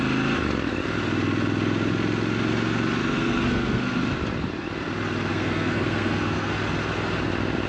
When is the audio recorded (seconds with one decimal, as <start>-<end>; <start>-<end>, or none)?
0.0-3.0; 4.0-5.3; 6.5-7.7

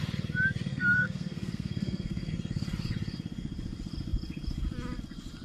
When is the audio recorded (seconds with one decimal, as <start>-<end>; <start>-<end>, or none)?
0.0-0.7; 2.3-5.4

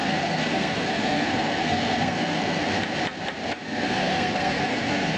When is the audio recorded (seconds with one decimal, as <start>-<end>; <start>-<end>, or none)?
2.6-3.5

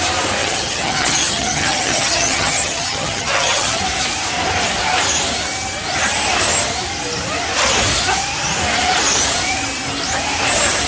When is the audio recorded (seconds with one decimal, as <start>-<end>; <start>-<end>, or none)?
0.0-0.4; 3.8-10.9

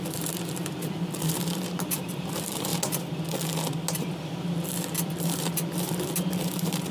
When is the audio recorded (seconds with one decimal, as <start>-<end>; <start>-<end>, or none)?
2.7-4.1

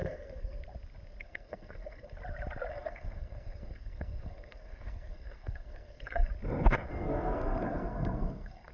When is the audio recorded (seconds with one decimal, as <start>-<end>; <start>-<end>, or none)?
0.6-1.2; 2.2-2.7; 6.3-6.9

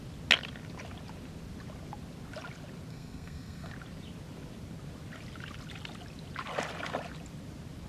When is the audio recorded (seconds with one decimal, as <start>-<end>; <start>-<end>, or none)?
0.0-2.9; 3.7-7.9

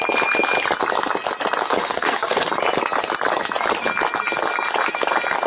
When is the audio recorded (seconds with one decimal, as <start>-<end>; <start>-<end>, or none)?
0.0-1.8; 2.5-5.5